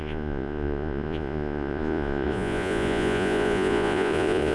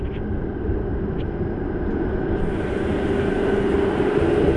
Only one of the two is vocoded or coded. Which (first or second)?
first